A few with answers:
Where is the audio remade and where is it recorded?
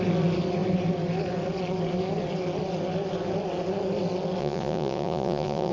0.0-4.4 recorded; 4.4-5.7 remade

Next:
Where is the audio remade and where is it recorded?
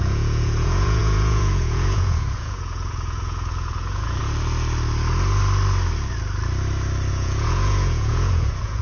0.0-4.2 remade; 4.2-7.1 recorded; 7.1-8.8 remade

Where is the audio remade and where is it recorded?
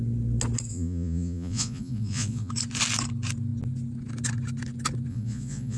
0.0-0.7 recorded; 0.7-2.5 remade; 2.5-5.1 recorded; 5.1-5.8 remade